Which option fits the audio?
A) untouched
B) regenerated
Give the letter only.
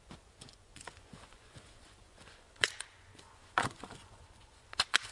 B